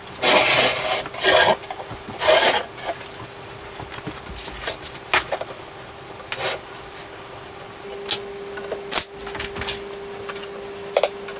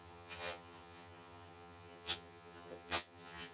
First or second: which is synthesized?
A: second